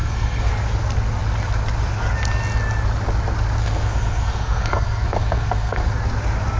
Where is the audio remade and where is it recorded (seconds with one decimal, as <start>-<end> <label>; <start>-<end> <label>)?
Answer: 0.0-0.5 remade; 0.5-3.6 recorded; 3.6-5.9 remade; 5.9-6.6 recorded